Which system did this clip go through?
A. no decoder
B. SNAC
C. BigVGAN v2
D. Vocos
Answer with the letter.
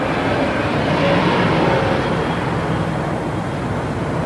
C